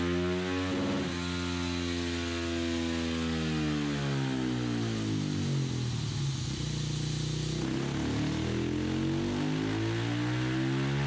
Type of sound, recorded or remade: recorded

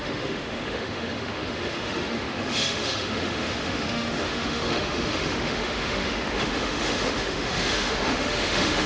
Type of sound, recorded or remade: remade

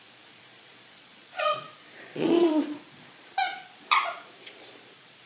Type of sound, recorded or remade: remade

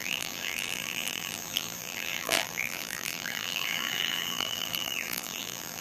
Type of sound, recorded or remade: remade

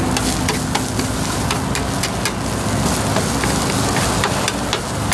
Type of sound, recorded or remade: recorded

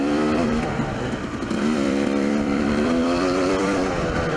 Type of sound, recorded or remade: remade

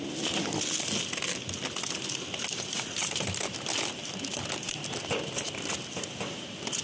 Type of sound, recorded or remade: recorded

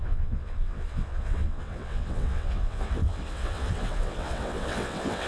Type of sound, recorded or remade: remade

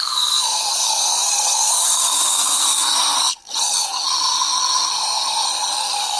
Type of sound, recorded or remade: remade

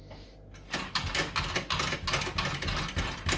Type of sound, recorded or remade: recorded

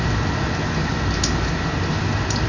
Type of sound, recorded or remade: recorded